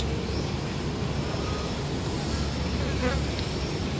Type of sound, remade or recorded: recorded